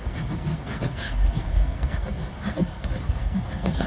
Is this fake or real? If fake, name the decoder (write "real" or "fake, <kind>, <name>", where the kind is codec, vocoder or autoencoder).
fake, codec, SNAC